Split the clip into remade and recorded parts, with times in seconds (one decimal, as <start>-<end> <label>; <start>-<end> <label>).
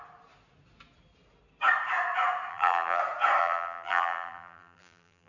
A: 0.0-2.5 recorded; 2.5-3.0 remade; 3.0-3.4 recorded; 3.4-5.3 remade